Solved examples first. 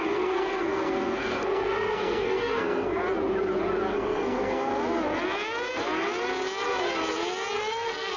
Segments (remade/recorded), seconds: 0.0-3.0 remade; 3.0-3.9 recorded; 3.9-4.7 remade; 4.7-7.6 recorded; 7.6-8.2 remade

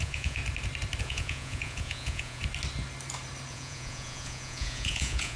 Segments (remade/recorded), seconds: 0.0-0.4 remade; 0.4-1.0 recorded; 1.0-2.4 remade; 2.4-3.5 recorded; 3.5-5.4 remade

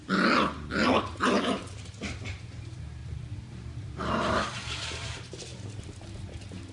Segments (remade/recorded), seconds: 0.0-1.1 recorded; 1.1-3.0 remade; 3.0-3.5 recorded; 3.5-6.7 remade

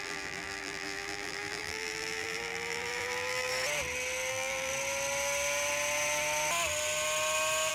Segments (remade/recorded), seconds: 0.0-3.5 remade; 3.5-4.3 recorded; 4.3-4.7 remade; 4.7-7.7 recorded